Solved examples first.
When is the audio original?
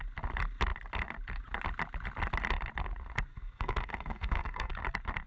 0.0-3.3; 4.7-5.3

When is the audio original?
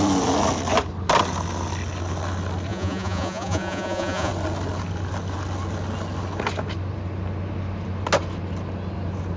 0.0-2.7; 4.3-9.4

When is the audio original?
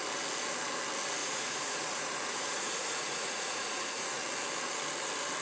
0.0-1.2; 4.2-5.4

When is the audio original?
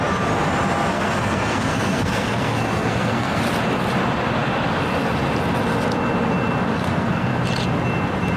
0.0-0.9; 3.4-6.7; 7.3-8.4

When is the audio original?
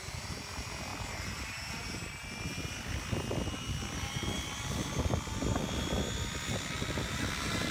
0.0-7.7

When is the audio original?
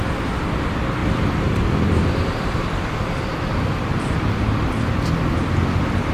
0.0-1.0; 4.7-6.1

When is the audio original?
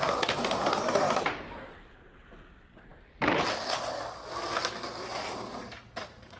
0.0-6.4